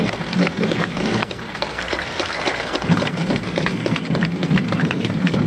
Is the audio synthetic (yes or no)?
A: yes